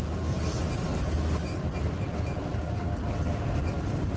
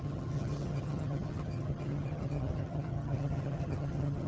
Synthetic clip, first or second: second